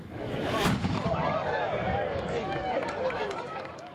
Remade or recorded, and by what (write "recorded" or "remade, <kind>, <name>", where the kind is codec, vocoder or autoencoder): remade, codec, DAC